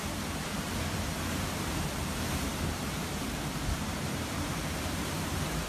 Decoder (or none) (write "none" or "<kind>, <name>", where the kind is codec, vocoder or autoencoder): vocoder, BigVGAN v2